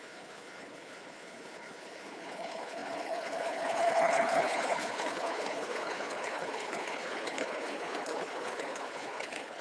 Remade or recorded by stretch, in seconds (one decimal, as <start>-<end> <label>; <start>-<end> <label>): 0.0-9.6 remade